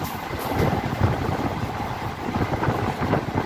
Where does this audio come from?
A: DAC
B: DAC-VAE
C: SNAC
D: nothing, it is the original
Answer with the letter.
D